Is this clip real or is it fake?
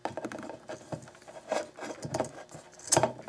real